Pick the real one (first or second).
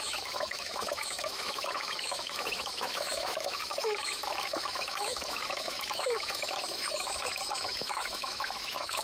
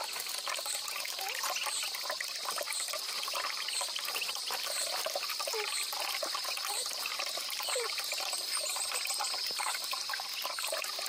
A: second